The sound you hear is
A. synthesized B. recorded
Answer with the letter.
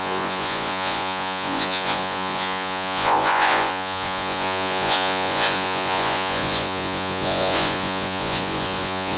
A